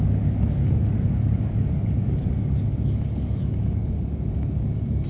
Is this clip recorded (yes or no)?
no